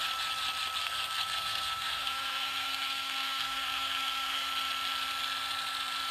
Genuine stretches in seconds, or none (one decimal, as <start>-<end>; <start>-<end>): 0.0-0.8; 4.5-6.1